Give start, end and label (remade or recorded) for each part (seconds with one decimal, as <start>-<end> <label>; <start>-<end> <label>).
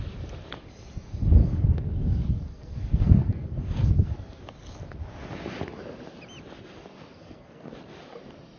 0.0-1.4 recorded; 1.4-4.4 remade; 4.4-7.1 recorded; 7.1-7.7 remade; 7.7-8.6 recorded